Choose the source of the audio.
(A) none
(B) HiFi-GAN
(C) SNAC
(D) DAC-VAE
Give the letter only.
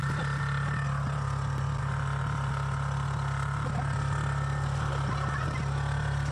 A